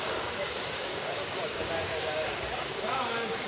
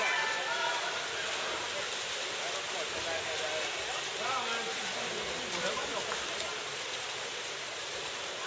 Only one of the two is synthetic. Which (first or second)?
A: first